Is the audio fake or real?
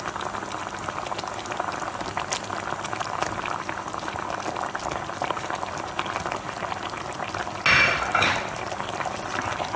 real